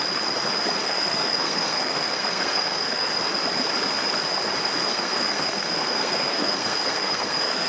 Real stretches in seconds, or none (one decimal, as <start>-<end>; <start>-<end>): 0.0-0.8; 3.1-4.8